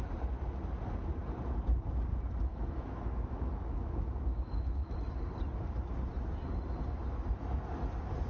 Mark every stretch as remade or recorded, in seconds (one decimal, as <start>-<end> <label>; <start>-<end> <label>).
0.0-2.5 recorded; 2.5-5.0 remade; 5.0-8.3 recorded